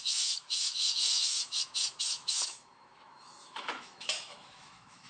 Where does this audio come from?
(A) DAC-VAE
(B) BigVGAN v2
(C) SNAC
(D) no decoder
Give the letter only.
A